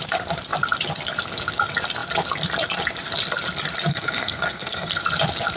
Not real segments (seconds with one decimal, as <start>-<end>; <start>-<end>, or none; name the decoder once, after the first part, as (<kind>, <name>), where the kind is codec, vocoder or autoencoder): 3.9-5.0 (codec, SNAC)